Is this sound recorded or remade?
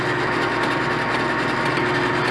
recorded